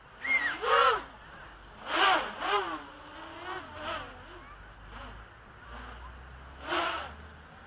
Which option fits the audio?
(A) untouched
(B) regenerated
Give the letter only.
A